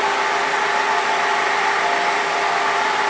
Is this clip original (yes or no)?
yes